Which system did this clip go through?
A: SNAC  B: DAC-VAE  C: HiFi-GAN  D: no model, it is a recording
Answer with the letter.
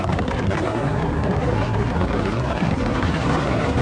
A